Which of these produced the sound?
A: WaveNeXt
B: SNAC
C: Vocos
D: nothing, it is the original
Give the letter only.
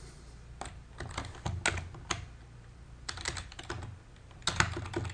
D